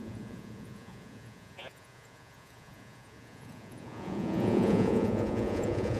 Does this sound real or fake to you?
fake